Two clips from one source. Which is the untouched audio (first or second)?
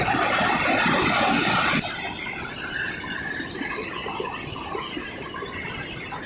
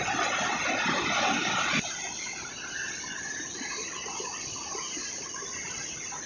second